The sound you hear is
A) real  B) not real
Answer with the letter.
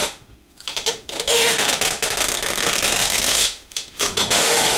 B